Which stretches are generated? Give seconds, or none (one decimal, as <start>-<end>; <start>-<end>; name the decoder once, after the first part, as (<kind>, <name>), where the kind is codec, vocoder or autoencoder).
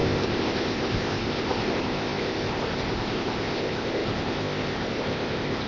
0.0-5.7 (codec, ZipCodec)